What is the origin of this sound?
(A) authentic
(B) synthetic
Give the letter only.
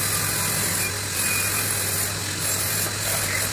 A